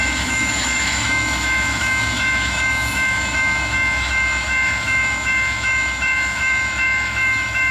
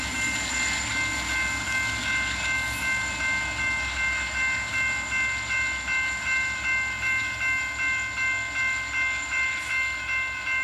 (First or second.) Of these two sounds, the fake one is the first